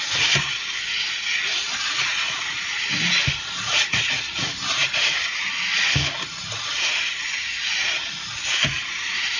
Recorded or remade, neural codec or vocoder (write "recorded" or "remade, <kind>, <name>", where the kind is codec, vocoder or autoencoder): recorded